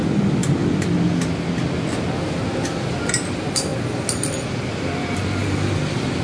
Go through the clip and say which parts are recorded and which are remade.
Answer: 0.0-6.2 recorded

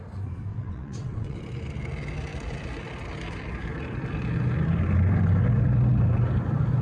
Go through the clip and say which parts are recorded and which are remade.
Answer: 0.0-0.5 recorded; 0.5-1.4 remade; 1.4-6.8 recorded